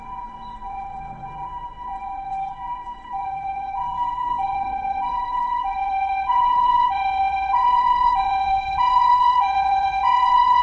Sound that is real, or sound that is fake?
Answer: fake